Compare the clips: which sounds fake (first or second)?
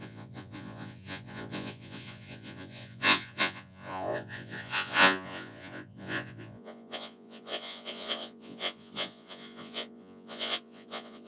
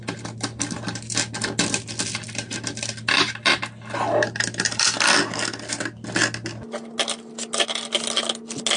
first